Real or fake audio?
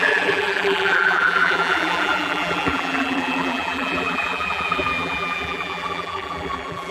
fake